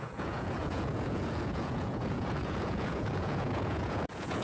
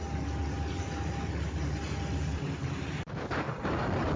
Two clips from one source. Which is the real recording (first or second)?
second